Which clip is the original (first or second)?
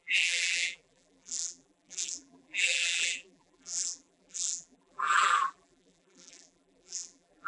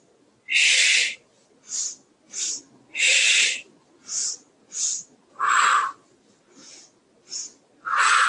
second